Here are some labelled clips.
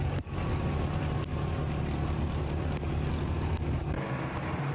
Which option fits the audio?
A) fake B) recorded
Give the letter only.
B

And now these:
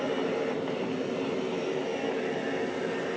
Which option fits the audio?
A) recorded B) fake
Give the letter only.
A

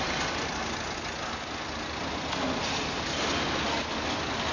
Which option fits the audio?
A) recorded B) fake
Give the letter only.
A